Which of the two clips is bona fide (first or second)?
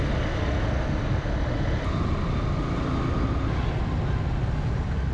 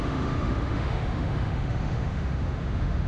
first